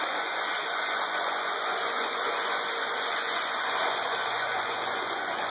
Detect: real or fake fake